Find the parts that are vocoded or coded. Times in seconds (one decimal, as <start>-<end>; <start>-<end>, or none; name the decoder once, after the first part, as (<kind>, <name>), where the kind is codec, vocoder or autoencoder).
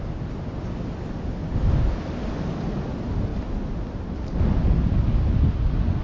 none